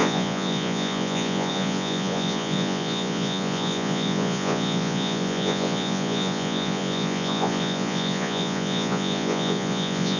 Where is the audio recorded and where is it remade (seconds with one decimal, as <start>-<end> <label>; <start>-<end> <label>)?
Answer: 0.0-10.2 remade